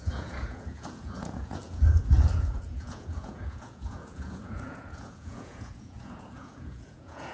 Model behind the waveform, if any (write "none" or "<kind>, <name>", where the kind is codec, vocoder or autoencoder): vocoder, Vocos